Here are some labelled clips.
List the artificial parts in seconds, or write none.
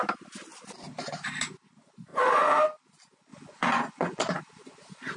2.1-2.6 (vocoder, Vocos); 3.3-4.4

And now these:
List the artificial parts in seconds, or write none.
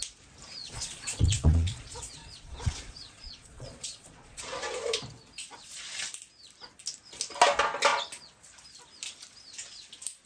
0.6-4.4 (vocoder, Vocos)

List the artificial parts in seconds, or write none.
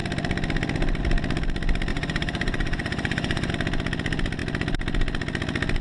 1.9-3.5 (vocoder, Vocos)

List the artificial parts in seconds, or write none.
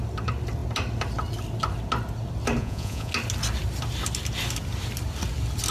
2.6-3.1 (vocoder, Vocos)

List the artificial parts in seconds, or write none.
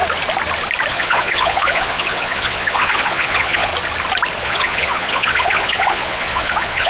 0.9-3.7 (vocoder, Vocos); 4.4-6.9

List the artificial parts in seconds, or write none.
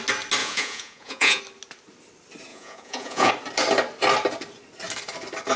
0.4-1.4 (vocoder, Vocos); 2.5-3.3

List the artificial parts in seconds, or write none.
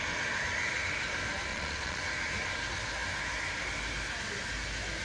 1.5-2.0 (vocoder, Vocos)